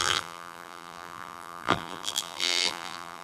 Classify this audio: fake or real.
fake